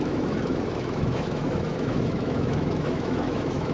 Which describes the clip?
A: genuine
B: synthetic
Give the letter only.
B